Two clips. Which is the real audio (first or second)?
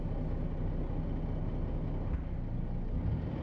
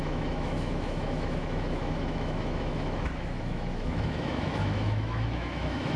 first